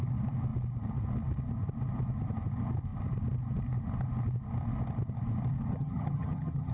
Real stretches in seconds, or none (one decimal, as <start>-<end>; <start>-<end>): 0.0-5.7